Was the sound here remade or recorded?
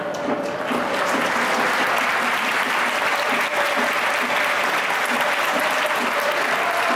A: recorded